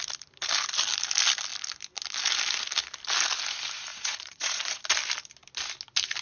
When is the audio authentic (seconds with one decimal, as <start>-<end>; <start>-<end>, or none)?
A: 0.0-3.9; 4.8-6.2